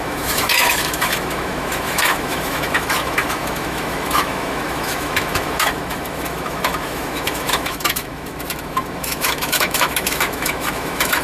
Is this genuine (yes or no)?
no